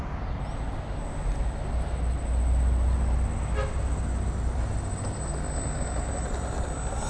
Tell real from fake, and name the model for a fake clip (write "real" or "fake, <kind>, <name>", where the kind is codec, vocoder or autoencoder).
real